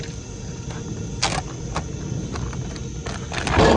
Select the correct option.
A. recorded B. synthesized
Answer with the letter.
A